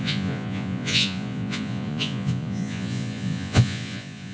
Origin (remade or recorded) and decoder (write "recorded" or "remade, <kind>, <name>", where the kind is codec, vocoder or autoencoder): remade, vocoder, Vocos